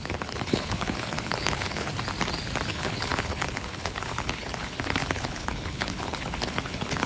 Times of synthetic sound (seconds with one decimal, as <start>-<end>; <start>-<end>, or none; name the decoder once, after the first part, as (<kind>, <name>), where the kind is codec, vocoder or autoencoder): 0.0-1.9 (codec, HILCodec); 2.7-7.1